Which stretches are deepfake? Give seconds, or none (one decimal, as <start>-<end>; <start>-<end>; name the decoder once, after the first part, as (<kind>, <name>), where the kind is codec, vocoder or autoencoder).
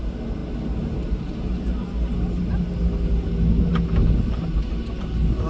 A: none